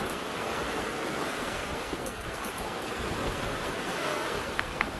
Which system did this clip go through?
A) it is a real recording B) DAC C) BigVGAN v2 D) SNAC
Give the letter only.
D